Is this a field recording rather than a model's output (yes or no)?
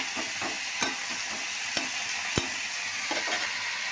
yes